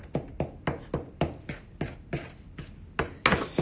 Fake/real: real